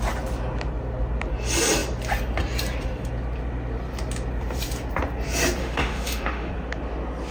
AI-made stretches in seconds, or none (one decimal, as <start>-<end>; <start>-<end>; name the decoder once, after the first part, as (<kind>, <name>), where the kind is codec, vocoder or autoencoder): 5.6-6.5 (autoencoder, DAC-VAE)